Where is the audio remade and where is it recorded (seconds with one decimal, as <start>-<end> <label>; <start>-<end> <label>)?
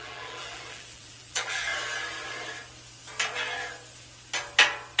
0.0-1.7 remade; 1.7-5.0 recorded